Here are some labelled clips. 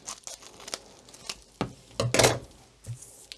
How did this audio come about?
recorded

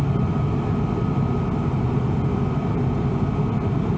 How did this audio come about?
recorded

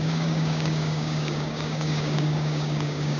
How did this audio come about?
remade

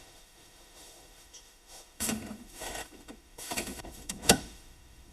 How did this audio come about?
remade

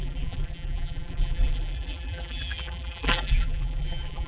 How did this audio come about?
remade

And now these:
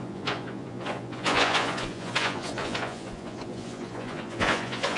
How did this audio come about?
remade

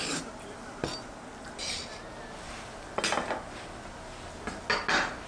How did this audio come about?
recorded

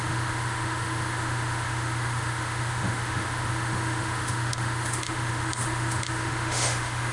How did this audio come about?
remade